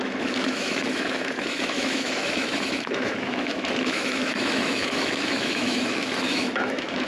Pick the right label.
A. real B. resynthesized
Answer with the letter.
B